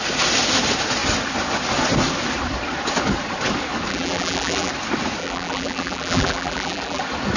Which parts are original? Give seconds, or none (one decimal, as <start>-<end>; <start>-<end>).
0.0-3.9; 4.7-5.2; 7.0-7.4